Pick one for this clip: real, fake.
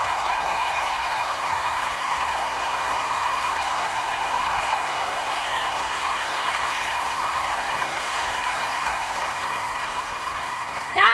fake